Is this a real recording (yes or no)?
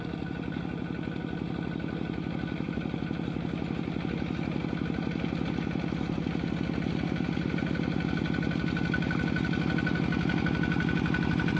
yes